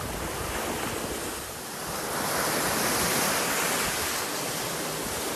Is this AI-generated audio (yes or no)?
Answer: no